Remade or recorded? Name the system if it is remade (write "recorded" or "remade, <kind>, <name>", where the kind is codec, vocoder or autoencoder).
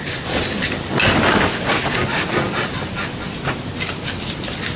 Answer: recorded